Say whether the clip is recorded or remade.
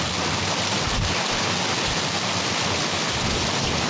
recorded